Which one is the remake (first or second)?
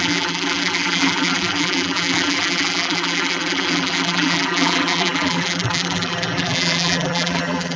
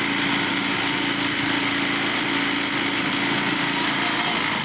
first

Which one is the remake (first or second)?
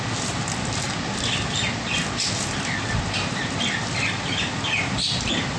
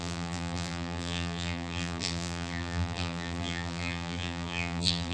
second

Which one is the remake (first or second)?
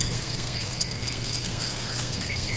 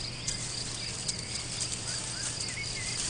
first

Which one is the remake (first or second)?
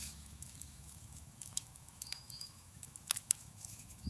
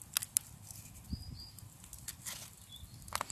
first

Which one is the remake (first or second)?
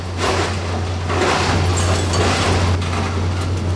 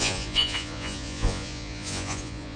second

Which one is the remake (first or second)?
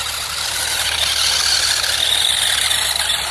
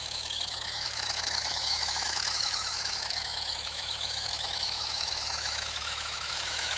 second